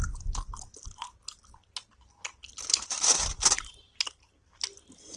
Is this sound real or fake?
real